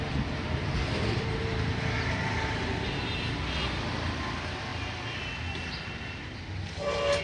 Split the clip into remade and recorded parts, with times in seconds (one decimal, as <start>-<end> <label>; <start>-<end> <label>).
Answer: 0.0-7.2 recorded